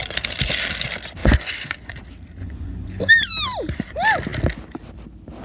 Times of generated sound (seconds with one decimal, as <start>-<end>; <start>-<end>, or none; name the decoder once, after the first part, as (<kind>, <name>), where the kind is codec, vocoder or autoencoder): 1.2-2.0 (vocoder, Vocos); 2.4-3.1